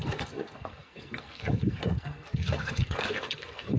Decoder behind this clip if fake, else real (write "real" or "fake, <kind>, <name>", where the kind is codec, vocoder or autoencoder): fake, codec, SNAC